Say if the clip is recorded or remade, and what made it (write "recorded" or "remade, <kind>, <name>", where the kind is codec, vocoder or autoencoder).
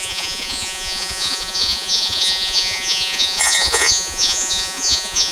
remade, vocoder, Vocos